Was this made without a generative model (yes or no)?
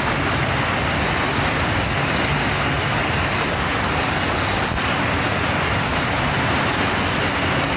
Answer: yes